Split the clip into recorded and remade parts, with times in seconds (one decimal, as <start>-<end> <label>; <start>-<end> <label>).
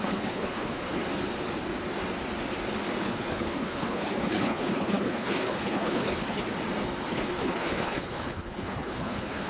0.0-1.0 remade; 1.0-3.0 recorded; 3.0-6.5 remade; 6.5-7.0 recorded; 7.0-9.5 remade